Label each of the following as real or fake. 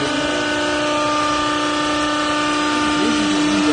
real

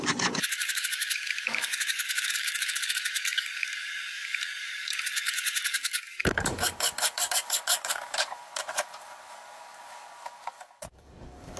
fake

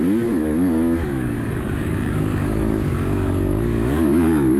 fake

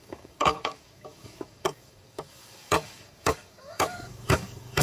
fake